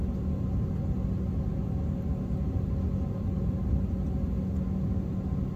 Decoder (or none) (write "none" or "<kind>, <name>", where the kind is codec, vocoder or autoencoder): none